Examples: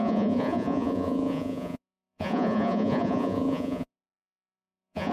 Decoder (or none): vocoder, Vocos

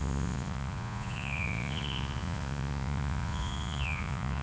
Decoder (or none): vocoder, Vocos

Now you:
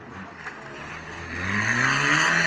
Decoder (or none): none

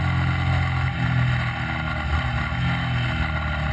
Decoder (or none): none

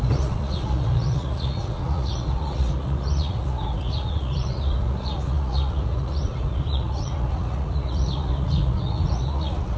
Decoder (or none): vocoder, Vocos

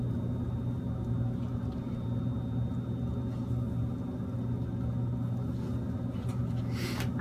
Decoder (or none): none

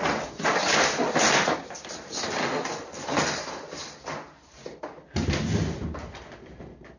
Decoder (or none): none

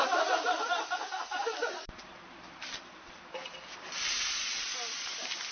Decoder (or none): vocoder, BigVGAN v2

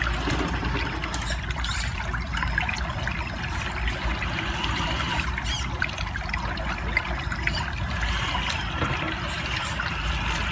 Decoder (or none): none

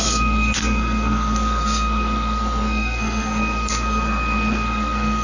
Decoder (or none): codec, SNAC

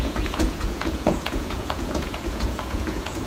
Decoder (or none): vocoder, Vocos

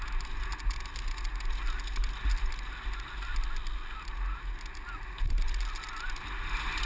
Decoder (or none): none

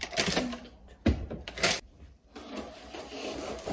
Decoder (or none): vocoder, BigVGAN v2